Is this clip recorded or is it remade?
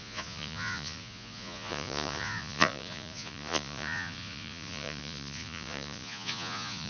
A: remade